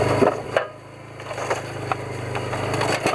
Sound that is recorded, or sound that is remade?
recorded